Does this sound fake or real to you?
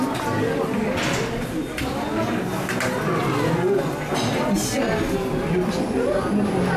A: real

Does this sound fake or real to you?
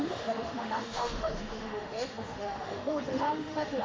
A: fake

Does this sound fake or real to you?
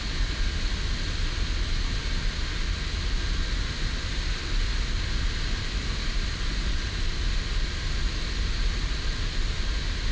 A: real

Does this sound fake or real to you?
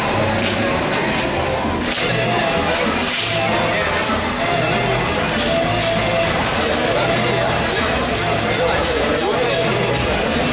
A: real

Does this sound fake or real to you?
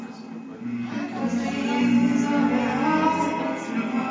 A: real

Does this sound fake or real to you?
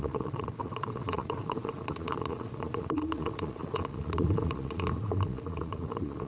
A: fake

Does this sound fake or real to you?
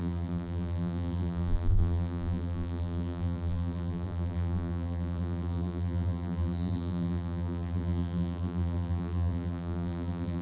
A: fake